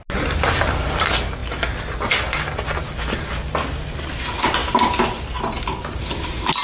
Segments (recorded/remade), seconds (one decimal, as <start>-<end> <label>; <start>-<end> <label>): 0.0-6.6 recorded